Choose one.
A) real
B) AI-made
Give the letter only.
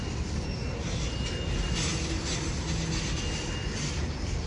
A